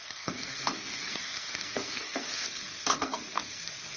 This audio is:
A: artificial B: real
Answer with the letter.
A